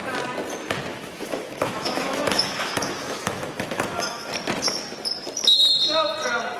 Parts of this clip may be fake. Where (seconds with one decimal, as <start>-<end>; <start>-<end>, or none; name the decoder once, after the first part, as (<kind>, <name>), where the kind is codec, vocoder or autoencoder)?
0.9-4.3 (autoencoder, DAC-VAE)